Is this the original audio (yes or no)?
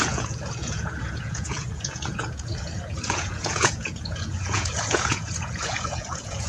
no